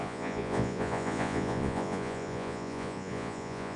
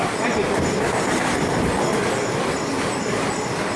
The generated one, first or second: first